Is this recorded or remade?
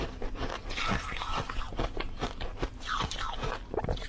recorded